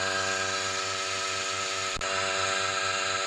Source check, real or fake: real